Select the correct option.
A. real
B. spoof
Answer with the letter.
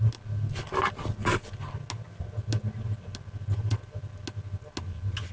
A